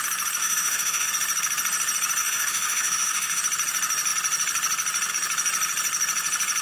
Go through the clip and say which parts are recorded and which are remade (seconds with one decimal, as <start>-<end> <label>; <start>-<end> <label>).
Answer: 0.0-0.4 recorded; 0.4-1.1 remade; 1.1-2.2 recorded; 2.2-3.4 remade; 3.4-6.6 recorded